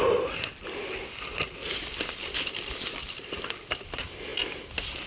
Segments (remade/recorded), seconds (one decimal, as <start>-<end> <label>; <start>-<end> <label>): 0.0-5.1 recorded